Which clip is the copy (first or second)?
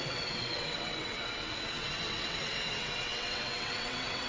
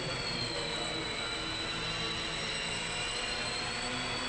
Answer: first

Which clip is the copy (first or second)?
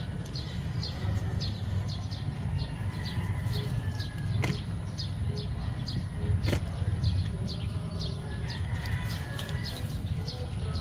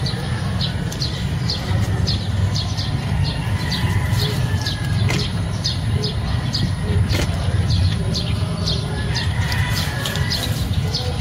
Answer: second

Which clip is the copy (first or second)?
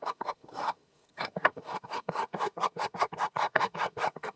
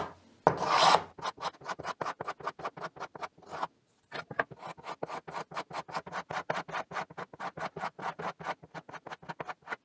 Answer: first